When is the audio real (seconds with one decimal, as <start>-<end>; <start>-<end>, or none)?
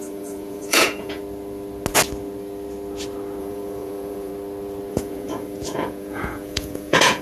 1.2-3.4; 4.3-4.9